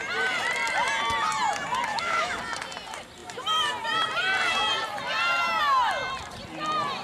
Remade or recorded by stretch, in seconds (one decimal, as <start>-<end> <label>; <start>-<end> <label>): 0.0-1.9 recorded; 1.9-2.4 remade; 2.4-7.0 recorded